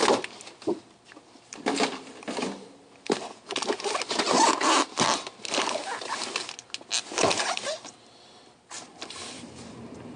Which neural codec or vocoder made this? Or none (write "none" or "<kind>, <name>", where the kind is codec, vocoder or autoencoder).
none